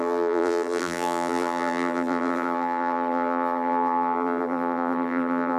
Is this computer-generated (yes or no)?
yes